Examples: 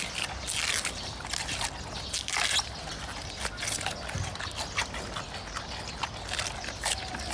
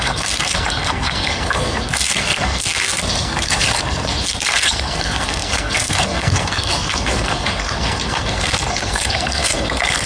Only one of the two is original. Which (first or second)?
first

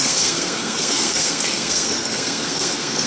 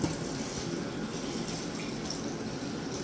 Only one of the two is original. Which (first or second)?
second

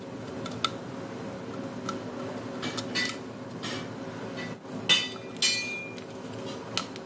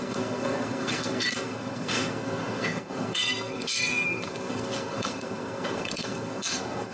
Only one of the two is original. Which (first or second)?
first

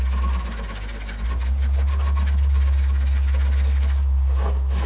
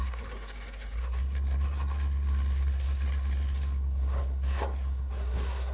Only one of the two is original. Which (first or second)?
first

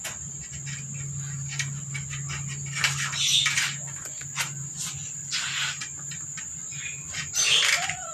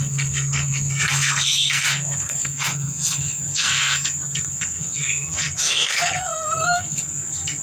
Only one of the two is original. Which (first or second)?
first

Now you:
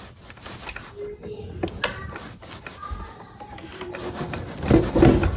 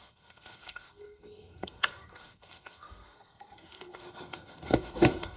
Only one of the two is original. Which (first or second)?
first